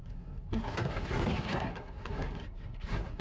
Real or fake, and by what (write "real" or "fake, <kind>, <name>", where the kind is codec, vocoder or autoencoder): fake, codec, SNAC